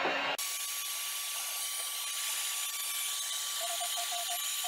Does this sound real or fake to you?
real